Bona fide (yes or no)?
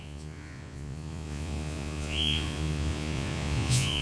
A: no